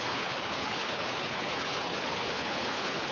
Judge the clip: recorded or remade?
remade